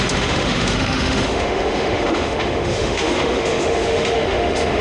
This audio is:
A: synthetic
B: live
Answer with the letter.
A